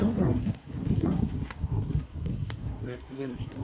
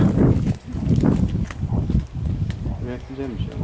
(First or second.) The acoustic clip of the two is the second